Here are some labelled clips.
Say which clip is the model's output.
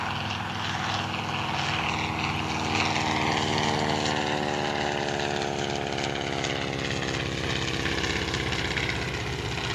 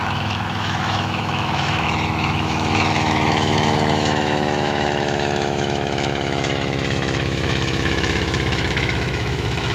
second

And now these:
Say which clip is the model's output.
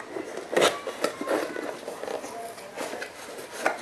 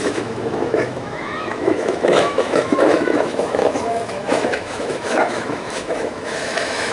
second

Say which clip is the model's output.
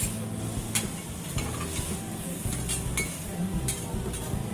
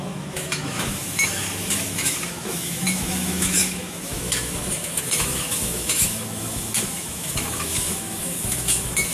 second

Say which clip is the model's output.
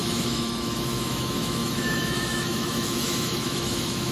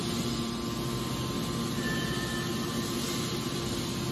first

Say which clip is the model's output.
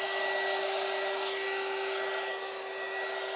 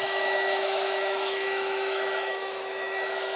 second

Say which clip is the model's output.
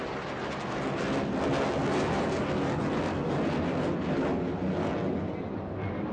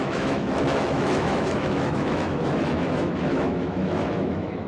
second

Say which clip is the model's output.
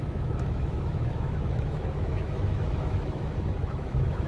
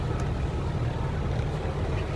first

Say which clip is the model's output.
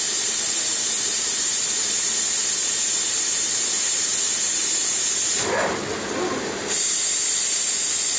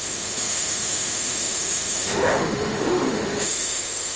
second